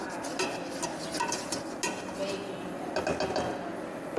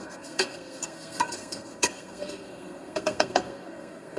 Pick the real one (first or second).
first